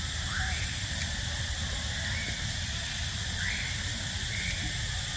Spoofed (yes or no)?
no